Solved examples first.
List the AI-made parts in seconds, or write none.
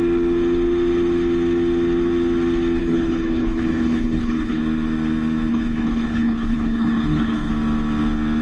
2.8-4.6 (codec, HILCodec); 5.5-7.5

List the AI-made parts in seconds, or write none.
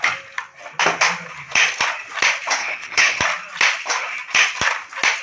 2.6-3.2 (codec, HILCodec)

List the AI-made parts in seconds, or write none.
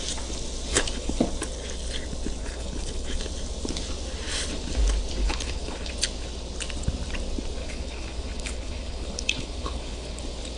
0.7-1.2 (codec, HILCodec); 2.4-3.2; 5.2-5.9; 7.6-10.2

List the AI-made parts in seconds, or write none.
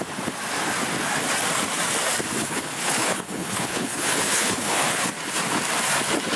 2.4-5.1 (codec, HILCodec)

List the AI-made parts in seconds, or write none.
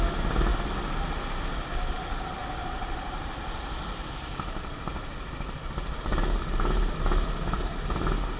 none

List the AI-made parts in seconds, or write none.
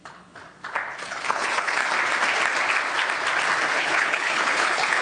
0.0-0.4 (codec, HILCodec); 1.0-1.8; 3.7-5.0